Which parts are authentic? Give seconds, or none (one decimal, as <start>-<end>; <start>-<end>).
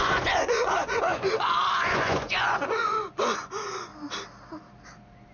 3.9-5.3